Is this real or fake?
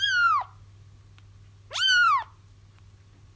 real